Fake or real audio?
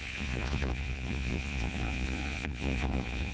fake